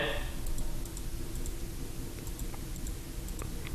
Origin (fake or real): real